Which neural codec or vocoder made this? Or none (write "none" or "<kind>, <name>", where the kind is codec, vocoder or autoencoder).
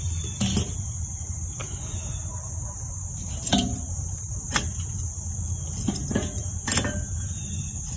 none